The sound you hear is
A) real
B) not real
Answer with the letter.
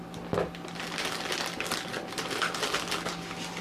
A